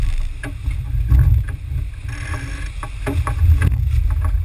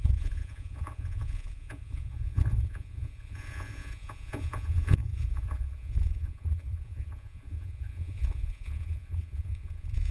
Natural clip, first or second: first